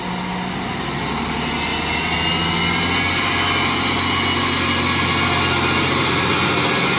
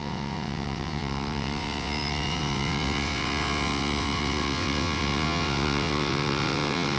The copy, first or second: second